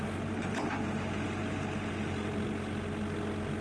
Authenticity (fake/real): real